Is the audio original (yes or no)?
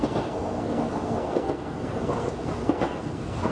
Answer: no